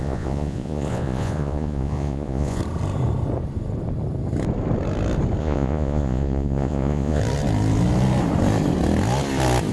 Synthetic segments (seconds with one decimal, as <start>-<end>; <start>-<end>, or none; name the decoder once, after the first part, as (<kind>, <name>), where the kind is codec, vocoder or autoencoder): 0.0-2.6 (vocoder, Vocos); 5.4-7.2